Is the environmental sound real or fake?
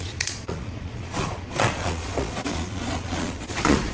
fake